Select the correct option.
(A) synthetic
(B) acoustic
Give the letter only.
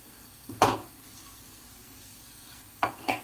A